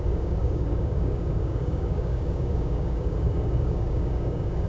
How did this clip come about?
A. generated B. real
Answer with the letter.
A